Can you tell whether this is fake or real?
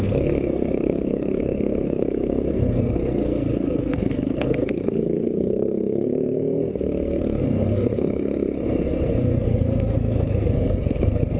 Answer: fake